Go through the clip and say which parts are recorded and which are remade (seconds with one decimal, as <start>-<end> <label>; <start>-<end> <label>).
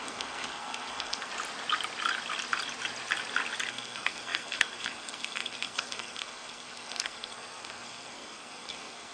0.0-1.3 remade; 1.3-3.7 recorded; 3.7-9.1 remade